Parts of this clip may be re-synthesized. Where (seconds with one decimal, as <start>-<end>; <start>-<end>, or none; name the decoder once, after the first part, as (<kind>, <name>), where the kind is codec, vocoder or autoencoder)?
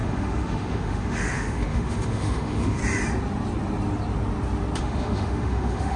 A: 0.0-2.8 (autoencoder, DAC-VAE); 4.8-6.0